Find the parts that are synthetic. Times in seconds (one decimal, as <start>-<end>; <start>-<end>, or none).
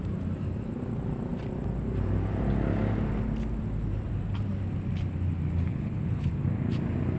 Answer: 5.7-6.3